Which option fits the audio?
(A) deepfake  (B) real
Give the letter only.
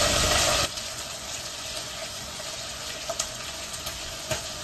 A